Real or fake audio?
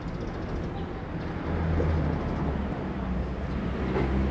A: real